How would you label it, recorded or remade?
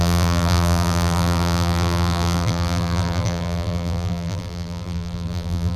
remade